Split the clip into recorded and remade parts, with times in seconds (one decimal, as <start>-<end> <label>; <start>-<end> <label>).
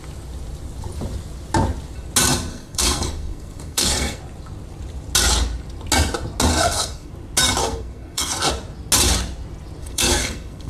0.0-2.5 recorded; 2.5-4.2 remade; 4.2-6.5 recorded; 6.5-7.1 remade; 7.1-7.6 recorded; 7.6-8.5 remade; 8.5-9.8 recorded; 9.8-10.7 remade